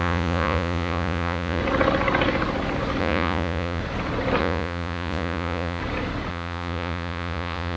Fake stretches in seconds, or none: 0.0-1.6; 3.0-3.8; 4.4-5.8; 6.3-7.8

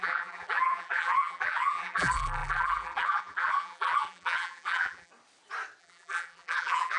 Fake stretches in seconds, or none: 0.0-5.1; 5.8-7.0

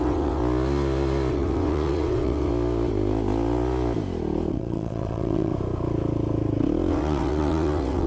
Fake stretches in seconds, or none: 0.0-0.4; 1.3-2.5; 4.5-5.5; 6.9-8.1

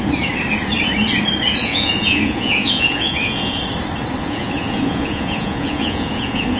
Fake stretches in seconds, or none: 1.6-3.6; 4.2-6.6

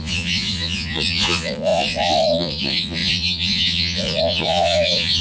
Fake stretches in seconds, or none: 0.0-5.2

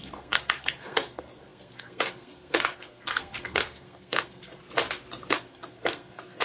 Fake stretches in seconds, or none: 0.0-4.6; 5.3-6.4

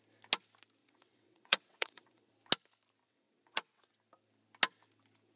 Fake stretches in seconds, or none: 0.8-2.3; 3.0-3.9